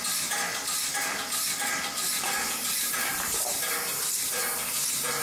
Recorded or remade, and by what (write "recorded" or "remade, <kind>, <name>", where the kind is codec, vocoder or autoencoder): recorded